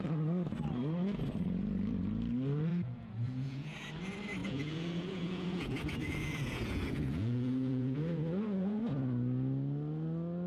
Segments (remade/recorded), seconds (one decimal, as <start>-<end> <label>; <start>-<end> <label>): 0.0-2.7 recorded; 2.7-3.9 remade; 3.9-4.4 recorded; 4.4-8.8 remade; 8.8-10.5 recorded